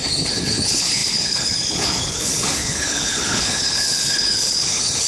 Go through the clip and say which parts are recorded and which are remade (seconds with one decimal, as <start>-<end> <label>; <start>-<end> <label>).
0.0-5.1 remade